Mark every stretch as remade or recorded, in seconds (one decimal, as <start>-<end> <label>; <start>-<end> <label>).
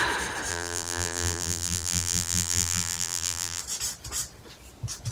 0.0-0.5 recorded; 0.5-3.6 remade; 3.6-5.1 recorded